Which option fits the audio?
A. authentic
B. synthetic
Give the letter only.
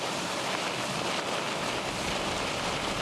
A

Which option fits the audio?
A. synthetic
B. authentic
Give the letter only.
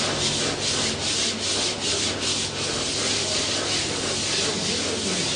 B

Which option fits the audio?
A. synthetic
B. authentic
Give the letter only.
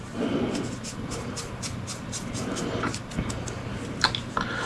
B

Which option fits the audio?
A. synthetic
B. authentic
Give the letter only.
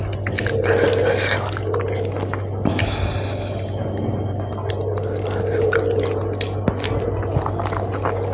B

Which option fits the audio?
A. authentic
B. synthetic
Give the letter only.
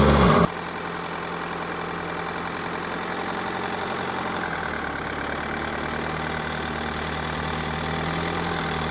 A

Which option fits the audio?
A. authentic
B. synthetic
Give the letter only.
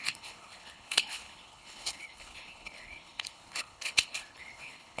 B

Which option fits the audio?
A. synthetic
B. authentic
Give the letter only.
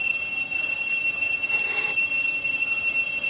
B